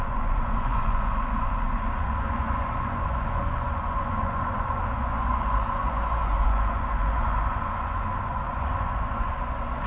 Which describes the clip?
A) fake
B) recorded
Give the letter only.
A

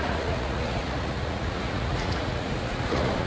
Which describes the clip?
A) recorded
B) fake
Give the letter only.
B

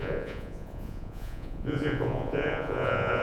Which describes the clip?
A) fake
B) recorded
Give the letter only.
A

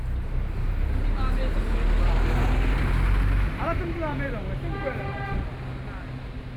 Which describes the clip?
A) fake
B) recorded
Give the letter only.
B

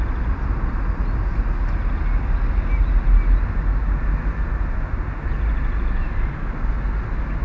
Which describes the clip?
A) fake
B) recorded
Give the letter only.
B